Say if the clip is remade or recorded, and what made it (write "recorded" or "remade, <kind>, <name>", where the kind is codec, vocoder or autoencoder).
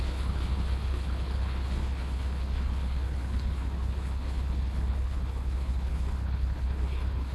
remade, codec, HILCodec